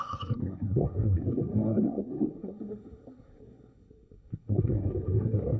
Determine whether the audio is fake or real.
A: fake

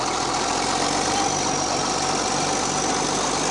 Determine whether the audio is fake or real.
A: real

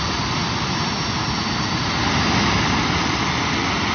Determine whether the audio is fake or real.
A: real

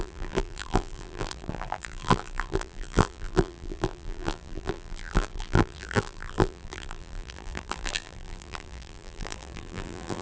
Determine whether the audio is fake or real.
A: fake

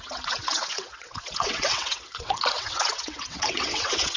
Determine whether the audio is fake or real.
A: fake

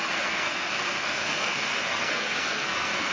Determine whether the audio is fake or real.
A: fake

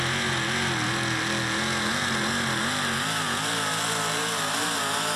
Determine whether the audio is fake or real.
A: real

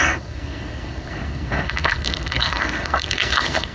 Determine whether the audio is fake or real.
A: fake